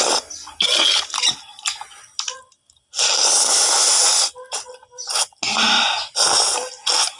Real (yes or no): yes